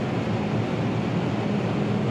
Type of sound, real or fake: real